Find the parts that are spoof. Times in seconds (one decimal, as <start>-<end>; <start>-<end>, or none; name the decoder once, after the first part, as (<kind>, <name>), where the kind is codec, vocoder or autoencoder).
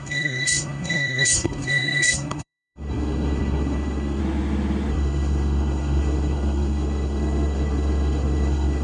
0.0-4.2 (codec, SNAC); 4.9-8.8